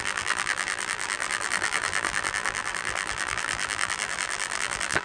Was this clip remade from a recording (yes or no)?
yes